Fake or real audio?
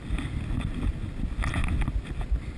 real